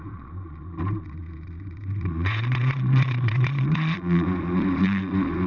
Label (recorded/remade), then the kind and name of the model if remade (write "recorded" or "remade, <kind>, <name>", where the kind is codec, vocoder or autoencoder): remade, vocoder, Vocos